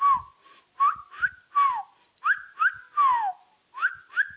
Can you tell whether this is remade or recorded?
recorded